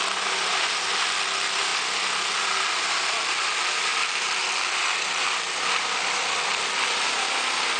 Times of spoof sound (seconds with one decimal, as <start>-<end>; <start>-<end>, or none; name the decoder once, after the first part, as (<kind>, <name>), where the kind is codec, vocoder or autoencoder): none